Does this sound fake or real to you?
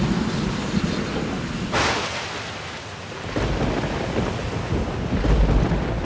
real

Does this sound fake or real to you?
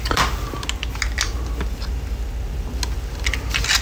real